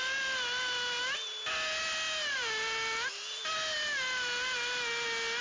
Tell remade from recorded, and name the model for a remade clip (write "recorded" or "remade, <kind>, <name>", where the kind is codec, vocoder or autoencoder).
recorded